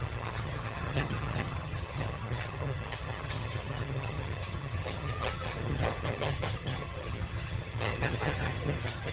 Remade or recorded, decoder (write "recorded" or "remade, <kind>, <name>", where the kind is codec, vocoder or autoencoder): remade, vocoder, HiFi-GAN